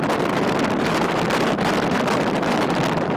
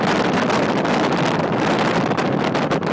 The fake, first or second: first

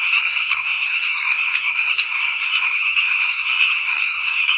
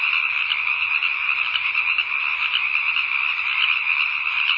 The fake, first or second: first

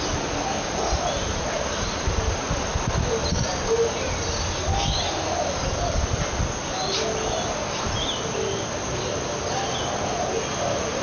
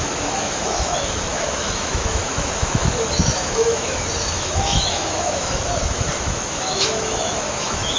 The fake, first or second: second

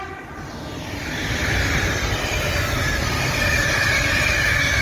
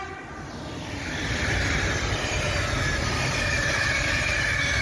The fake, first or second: first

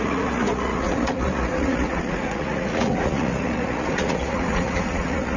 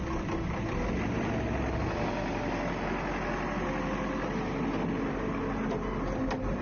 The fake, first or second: first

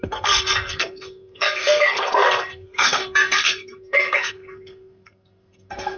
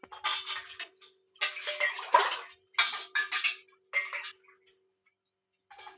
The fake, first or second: first